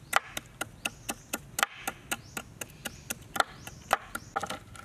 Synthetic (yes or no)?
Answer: no